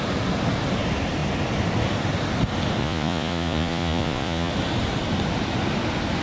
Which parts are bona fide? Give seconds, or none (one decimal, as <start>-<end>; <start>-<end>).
0.0-2.8; 4.5-6.2